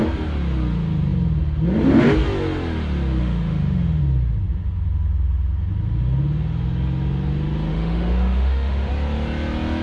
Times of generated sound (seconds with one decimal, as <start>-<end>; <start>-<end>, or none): 3.2-4.0; 7.7-8.9